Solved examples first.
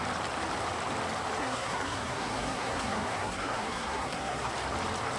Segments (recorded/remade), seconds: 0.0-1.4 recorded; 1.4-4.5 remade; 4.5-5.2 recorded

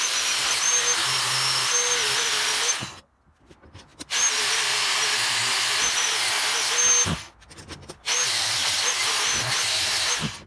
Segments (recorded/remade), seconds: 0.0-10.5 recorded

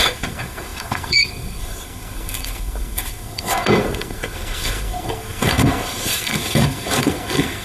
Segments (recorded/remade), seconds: 0.0-7.6 remade